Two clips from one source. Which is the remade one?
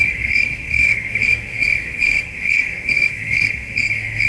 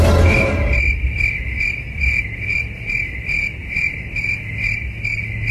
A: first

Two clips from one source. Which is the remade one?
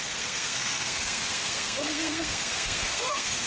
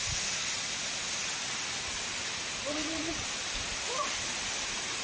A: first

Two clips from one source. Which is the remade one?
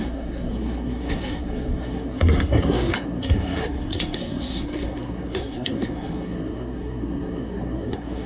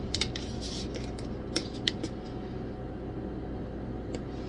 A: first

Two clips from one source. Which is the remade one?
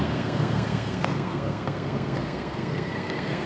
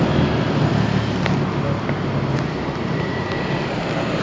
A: first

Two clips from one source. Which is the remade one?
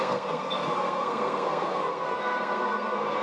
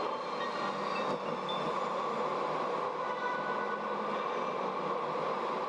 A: first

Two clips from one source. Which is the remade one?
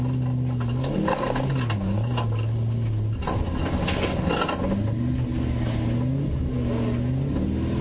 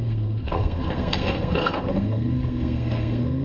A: second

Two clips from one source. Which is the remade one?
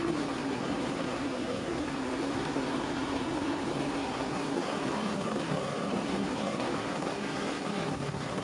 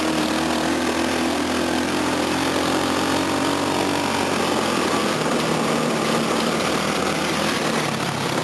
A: first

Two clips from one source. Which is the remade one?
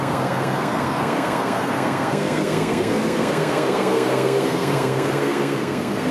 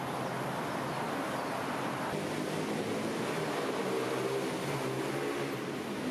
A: first